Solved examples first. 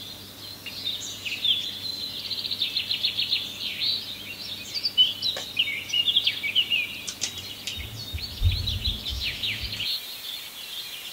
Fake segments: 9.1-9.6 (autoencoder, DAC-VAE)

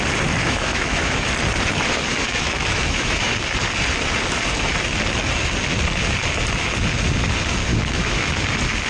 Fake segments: 0.4-1.3 (autoencoder, DAC-VAE); 2.1-3.3; 7.7-8.3

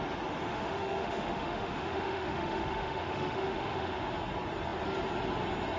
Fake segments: 0.5-4.0 (autoencoder, DAC-VAE)

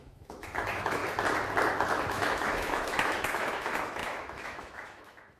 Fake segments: 0.0-1.0 (autoencoder, DAC-VAE); 2.1-5.4

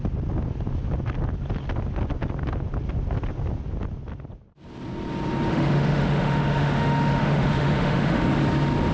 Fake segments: 5.5-8.2 (autoencoder, DAC-VAE)